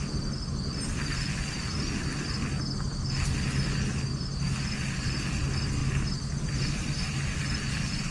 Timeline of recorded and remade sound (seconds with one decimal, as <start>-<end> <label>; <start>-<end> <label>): 0.0-8.1 recorded